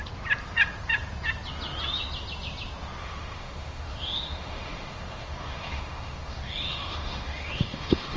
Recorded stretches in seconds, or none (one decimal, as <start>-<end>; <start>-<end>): 0.0-3.0